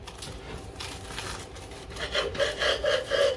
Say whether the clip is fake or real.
real